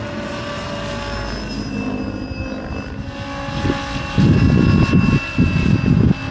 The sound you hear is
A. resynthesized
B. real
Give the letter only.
B